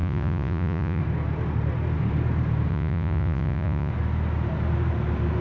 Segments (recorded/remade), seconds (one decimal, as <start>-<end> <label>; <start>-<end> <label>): 0.0-1.0 remade; 1.0-2.7 recorded; 2.7-3.9 remade; 3.9-5.4 recorded